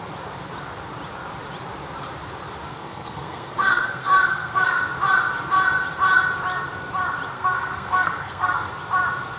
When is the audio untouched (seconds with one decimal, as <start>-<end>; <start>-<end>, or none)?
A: 0.0-2.7; 4.8-7.3; 8.7-9.4